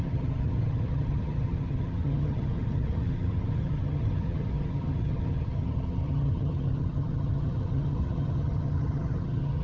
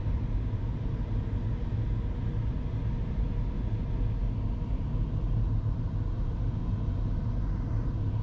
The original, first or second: second